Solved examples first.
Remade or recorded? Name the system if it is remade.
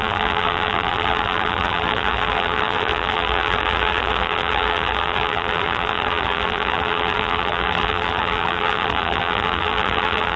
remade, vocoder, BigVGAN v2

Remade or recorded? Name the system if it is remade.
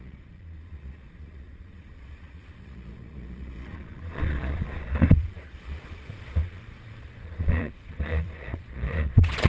remade, vocoder, Vocos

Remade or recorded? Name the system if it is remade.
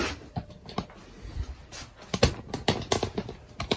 recorded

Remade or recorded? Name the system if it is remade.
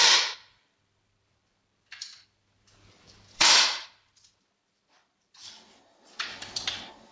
remade, vocoder, BigVGAN v2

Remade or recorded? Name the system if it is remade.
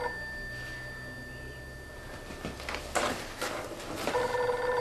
recorded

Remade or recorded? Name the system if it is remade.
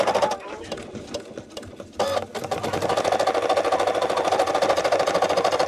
recorded